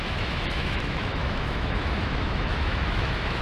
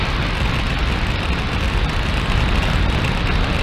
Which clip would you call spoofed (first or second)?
first